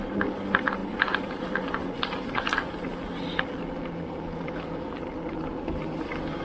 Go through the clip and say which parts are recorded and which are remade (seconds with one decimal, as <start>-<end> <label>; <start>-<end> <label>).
0.0-0.8 recorded; 0.8-2.7 remade; 2.7-6.4 recorded